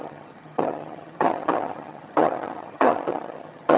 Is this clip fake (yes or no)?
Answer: yes